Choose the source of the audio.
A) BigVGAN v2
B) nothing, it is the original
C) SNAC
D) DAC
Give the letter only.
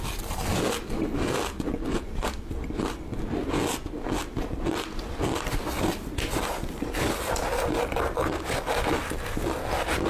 B